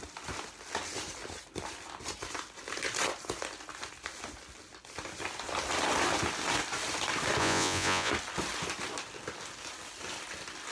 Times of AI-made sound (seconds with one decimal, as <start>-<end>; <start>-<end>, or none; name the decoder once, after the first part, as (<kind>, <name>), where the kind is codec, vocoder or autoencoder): 7.4-8.1 (vocoder, Vocos)